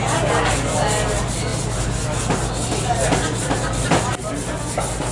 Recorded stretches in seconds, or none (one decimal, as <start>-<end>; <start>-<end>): 0.0-5.1